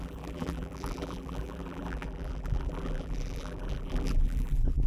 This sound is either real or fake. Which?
fake